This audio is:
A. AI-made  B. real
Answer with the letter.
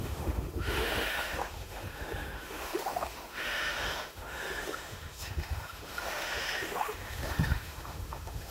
A